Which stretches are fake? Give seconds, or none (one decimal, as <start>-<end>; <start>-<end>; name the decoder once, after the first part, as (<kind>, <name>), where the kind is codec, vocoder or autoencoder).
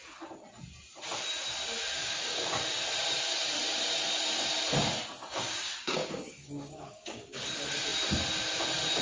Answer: 2.0-2.6 (codec, DAC); 5.2-7.4